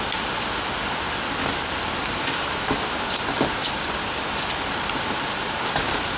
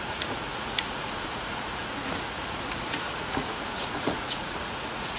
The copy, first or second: second